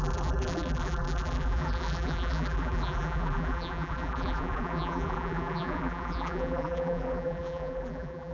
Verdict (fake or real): fake